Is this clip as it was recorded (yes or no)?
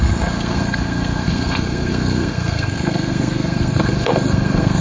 no